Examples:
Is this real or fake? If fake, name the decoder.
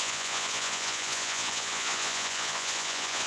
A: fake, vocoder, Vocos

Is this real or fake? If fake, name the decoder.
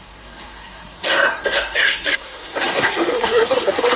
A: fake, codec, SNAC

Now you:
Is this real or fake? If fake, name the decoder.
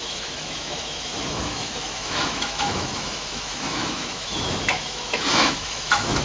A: fake, autoencoder, DAC-VAE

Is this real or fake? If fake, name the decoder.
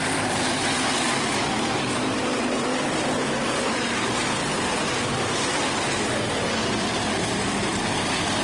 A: fake, vocoder, BigVGAN v2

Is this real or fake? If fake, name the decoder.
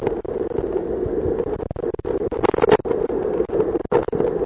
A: real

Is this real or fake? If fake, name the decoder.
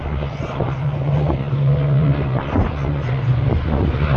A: fake, vocoder, Vocos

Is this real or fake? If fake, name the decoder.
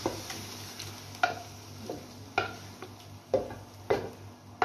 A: real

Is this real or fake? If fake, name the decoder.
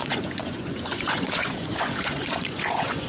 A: fake, vocoder, Vocos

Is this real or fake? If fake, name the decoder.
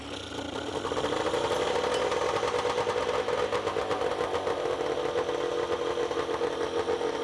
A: real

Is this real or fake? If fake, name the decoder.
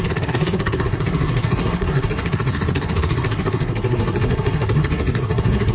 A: fake, codec, SNAC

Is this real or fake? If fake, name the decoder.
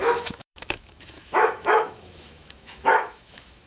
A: fake, autoencoder, DAC-VAE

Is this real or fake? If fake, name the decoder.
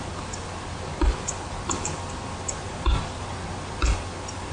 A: real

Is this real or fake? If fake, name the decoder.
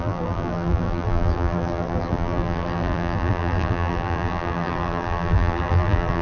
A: fake, vocoder, BigVGAN v2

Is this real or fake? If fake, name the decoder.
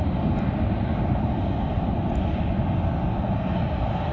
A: real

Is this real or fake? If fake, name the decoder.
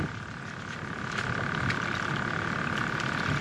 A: real